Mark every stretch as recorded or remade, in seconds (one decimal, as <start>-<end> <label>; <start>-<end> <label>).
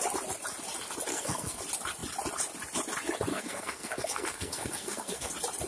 0.0-1.1 recorded; 1.1-1.6 remade; 1.6-3.3 recorded; 3.3-5.3 remade; 5.3-5.7 recorded